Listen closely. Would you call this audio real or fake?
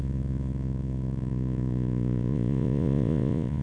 fake